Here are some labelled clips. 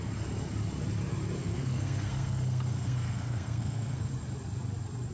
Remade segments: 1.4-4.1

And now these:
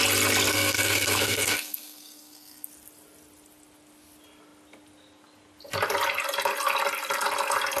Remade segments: 0.5-2.7

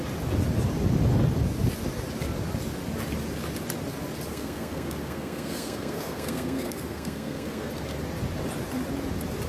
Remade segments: 4.3-7.7

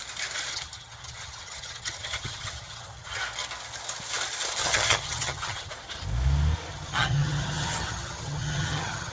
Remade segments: 0.5-3.2; 4.6-5.7; 6.7-9.1

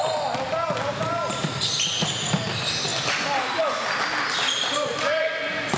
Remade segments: none

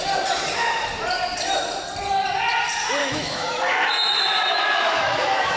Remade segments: 3.0-5.6

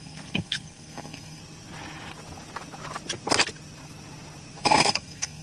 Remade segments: 0.0-1.4; 4.6-5.4